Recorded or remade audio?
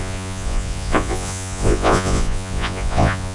remade